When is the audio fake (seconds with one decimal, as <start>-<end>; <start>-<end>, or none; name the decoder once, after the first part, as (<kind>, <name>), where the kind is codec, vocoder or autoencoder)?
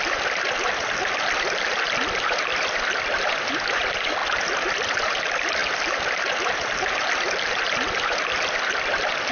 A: 0.0-4.2 (vocoder, BigVGAN v2); 4.7-5.6; 7.5-9.3